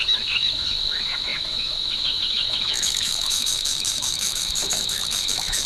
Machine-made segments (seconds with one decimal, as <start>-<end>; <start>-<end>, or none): 0.0-5.7